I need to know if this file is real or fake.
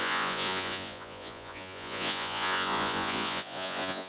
fake